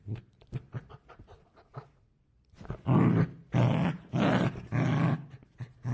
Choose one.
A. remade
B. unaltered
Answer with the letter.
B